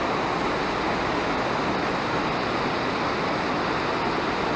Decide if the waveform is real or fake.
real